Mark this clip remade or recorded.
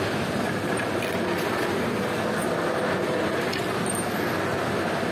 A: recorded